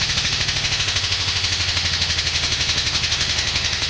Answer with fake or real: fake